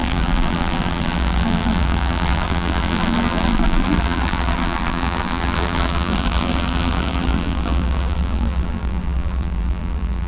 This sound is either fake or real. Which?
fake